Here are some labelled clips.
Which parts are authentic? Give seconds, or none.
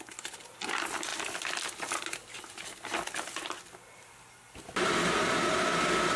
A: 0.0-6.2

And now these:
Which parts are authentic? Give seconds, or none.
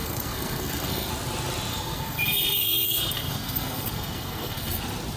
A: 1.1-1.7; 4.8-5.2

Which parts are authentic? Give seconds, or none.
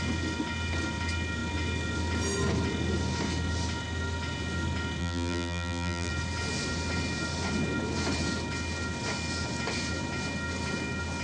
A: 0.0-5.0; 6.1-11.2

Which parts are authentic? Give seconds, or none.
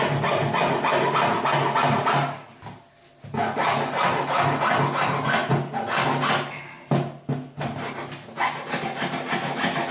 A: 0.0-9.9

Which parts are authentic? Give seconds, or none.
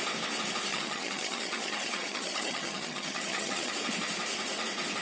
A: 0.0-0.7; 3.7-5.0